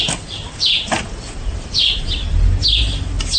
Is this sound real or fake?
real